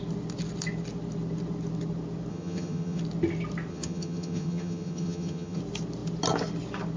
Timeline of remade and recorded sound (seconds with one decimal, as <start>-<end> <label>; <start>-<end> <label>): 0.0-2.3 recorded; 2.3-3.0 remade; 3.0-3.7 recorded; 3.7-5.6 remade; 5.6-7.0 recorded